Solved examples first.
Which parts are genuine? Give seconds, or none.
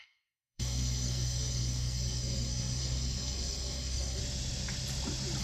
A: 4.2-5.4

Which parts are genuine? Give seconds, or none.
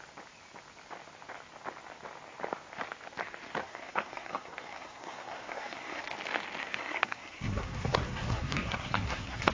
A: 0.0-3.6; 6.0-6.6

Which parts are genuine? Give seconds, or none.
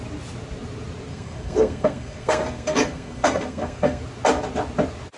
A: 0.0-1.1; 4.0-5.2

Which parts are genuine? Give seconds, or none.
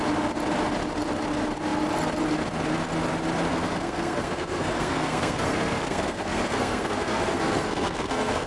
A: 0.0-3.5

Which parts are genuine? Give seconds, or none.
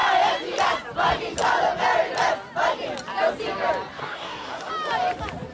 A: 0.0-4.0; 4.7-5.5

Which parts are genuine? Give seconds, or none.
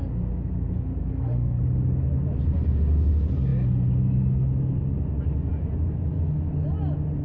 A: 0.0-1.0; 1.6-7.2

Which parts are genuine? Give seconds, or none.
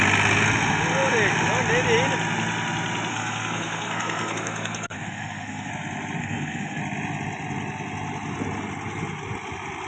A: 0.0-3.1; 5.7-6.2; 6.8-9.9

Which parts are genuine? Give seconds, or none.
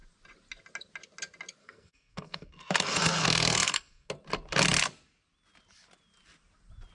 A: 0.0-1.6; 4.1-6.9